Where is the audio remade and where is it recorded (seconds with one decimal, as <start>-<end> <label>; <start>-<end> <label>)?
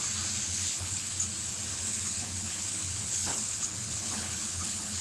0.0-0.5 recorded; 0.5-1.1 remade; 1.1-1.7 recorded; 1.7-5.0 remade